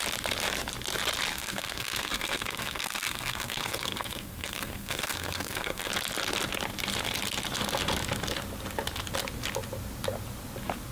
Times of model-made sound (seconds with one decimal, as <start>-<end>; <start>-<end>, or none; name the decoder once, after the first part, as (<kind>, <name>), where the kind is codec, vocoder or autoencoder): 1.3-5.9 (codec, SNAC)